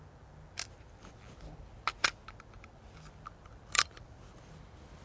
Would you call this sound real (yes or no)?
yes